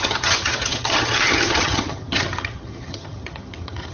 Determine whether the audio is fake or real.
fake